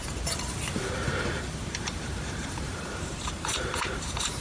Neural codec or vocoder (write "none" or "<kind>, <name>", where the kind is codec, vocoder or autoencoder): vocoder, BigVGAN v2